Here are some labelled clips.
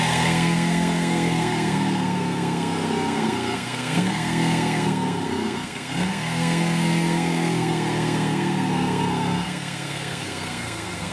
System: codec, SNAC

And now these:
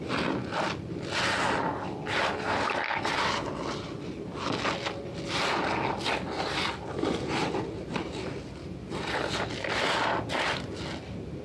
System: none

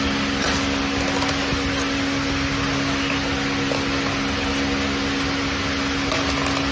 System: none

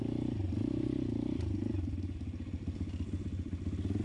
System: none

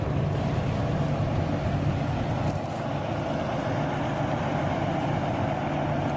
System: none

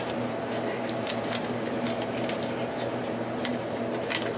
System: vocoder, BigVGAN v2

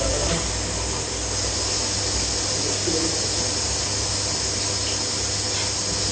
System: none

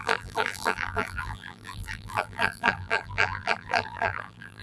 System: vocoder, BigVGAN v2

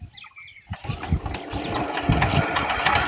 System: none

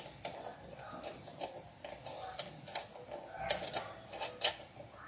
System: none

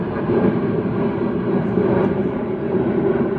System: vocoder, BigVGAN v2